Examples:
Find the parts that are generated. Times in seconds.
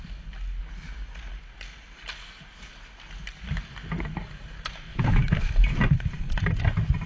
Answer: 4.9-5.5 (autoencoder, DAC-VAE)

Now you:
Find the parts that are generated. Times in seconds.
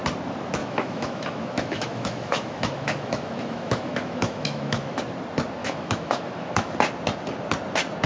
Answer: 0.6-5.0 (autoencoder, DAC-VAE); 5.6-6.7